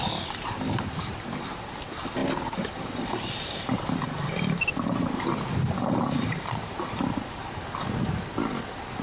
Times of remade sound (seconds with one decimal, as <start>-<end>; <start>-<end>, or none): none